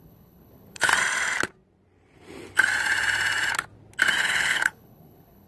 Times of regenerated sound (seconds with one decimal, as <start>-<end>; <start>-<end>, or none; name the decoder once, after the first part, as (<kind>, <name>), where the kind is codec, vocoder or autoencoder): 0.0-0.9 (codec, HILCodec); 4.2-5.5